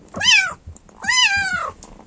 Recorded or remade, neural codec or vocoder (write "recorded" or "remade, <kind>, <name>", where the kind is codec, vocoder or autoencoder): recorded